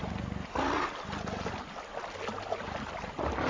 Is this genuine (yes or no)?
yes